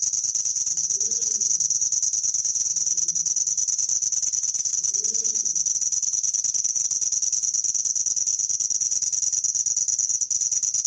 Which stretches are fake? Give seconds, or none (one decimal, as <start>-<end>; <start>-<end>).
none